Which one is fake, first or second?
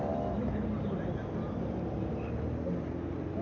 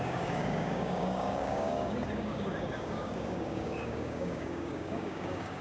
second